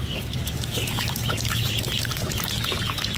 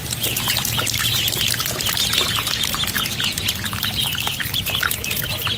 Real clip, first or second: second